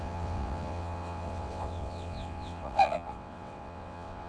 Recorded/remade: remade